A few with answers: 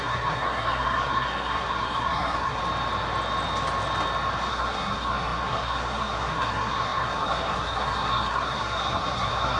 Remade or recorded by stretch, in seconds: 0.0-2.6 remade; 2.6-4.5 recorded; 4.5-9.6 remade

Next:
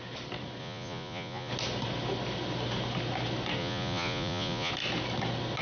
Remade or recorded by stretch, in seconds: 0.0-0.6 recorded; 0.6-1.5 remade; 1.5-3.6 recorded; 3.6-4.7 remade; 4.7-5.6 recorded